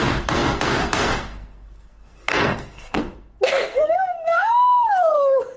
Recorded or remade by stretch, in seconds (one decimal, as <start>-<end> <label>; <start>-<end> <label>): 0.0-5.6 remade